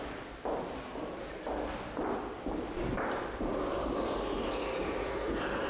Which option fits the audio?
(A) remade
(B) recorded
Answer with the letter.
B